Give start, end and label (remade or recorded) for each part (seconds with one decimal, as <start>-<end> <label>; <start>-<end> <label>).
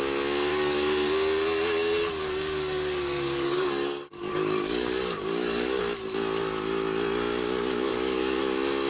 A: 0.0-0.5 recorded; 0.5-1.1 remade; 1.1-2.2 recorded; 2.2-5.8 remade; 5.8-7.9 recorded; 7.9-8.4 remade; 8.4-8.9 recorded